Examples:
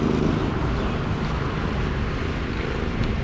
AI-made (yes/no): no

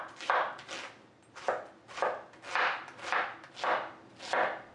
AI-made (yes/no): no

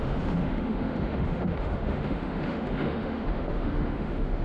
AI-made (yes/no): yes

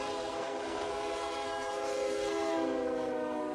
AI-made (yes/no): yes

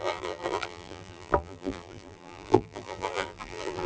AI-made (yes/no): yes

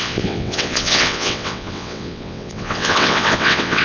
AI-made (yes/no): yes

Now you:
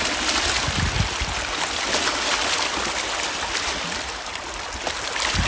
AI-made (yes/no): no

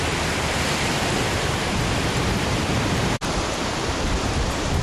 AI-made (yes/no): no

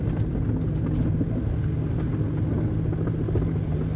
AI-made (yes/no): no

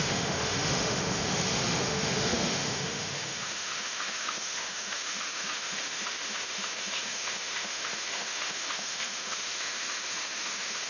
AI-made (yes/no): yes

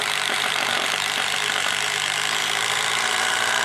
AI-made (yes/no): yes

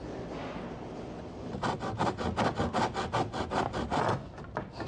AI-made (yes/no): no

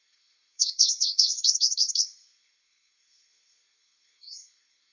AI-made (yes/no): yes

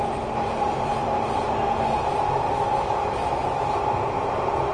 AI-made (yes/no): no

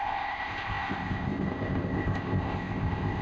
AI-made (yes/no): yes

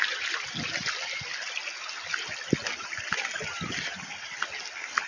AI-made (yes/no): no